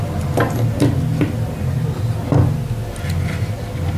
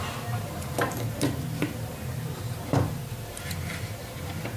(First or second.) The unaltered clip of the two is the first